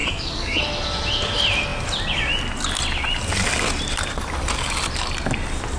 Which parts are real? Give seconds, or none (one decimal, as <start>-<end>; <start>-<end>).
0.6-5.8